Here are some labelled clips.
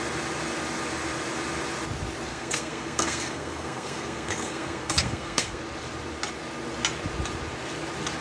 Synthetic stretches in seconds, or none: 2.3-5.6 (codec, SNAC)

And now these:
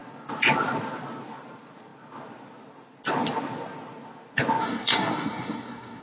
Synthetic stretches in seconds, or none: 4.6-6.0 (codec, SNAC)

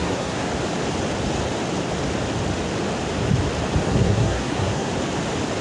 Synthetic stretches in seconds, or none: 0.0-0.5 (codec, SNAC); 3.9-4.9

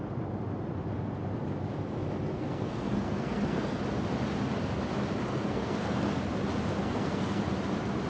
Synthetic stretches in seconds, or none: 2.3-3.8 (codec, SNAC); 5.3-6.0; 6.8-7.4

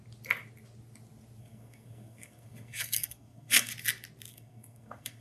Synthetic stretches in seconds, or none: 1.4-3.7 (codec, SNAC); 4.3-5.2